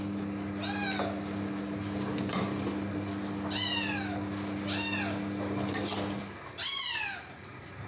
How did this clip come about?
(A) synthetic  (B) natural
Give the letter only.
B